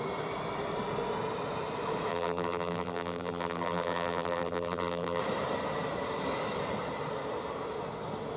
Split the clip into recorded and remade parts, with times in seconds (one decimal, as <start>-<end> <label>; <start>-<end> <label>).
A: 0.0-2.1 recorded; 2.1-5.2 remade; 5.2-8.4 recorded